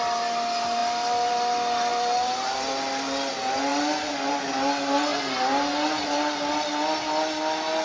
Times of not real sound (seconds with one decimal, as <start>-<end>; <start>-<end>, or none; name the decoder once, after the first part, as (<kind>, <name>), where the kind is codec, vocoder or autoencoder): 0.8-1.3 (vocoder, BigVGAN v2); 1.9-3.3

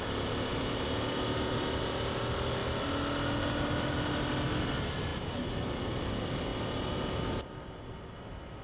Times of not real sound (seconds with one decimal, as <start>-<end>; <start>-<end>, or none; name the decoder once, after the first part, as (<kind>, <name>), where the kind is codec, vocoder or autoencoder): 0.5-1.8 (vocoder, BigVGAN v2); 5.1-6.0; 6.5-7.8

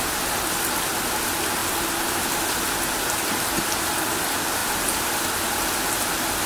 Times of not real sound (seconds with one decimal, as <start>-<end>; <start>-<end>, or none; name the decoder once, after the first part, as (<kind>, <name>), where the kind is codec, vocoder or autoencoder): 1.6-2.4 (vocoder, BigVGAN v2); 4.6-5.7

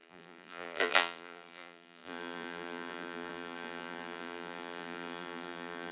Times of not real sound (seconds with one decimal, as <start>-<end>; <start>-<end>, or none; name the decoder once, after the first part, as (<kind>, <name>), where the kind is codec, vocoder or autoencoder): 0.0-5.9 (vocoder, BigVGAN v2)

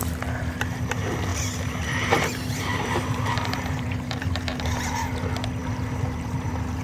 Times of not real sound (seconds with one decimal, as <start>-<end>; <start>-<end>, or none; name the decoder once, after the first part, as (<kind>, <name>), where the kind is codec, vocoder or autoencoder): 1.3-5.1 (vocoder, BigVGAN v2); 5.6-6.8

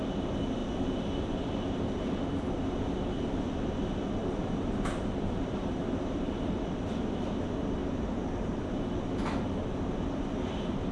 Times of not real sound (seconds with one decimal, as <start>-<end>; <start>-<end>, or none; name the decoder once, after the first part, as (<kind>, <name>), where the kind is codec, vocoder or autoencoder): 4.2-6.4 (vocoder, BigVGAN v2); 7.8-8.6